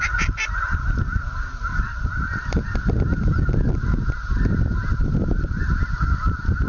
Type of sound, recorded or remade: recorded